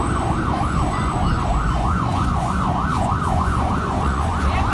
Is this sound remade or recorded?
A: remade